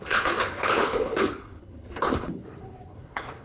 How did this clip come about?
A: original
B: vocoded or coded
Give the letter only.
B